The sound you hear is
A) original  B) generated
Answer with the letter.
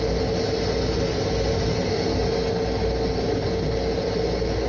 A